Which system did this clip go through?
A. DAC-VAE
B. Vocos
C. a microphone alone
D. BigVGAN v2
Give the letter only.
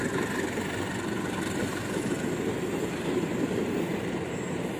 C